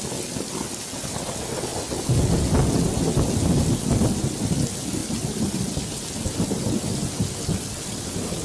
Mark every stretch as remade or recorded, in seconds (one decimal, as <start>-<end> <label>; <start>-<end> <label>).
0.0-5.0 recorded; 5.0-6.7 remade; 6.7-8.4 recorded